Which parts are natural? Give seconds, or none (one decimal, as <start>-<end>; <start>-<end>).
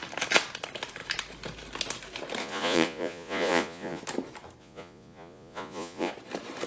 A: 0.0-2.4; 4.0-4.6; 6.1-6.7